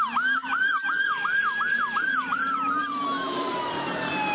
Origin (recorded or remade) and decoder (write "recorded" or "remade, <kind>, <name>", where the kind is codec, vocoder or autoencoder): remade, vocoder, BigVGAN v2